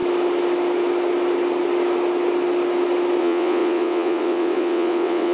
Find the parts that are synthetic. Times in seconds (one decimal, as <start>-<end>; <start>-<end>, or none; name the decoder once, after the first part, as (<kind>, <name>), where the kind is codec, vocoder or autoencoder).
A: 3.2-5.3 (vocoder, WaveNeXt)